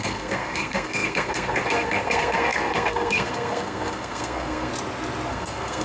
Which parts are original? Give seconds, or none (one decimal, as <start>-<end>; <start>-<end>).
4.7-5.3